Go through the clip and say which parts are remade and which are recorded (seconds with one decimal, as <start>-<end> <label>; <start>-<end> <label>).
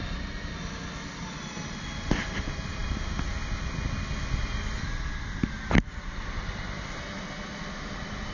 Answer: 0.0-8.3 recorded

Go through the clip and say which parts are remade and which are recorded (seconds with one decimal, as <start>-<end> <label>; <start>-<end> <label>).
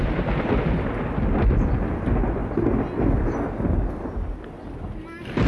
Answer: 0.0-5.5 recorded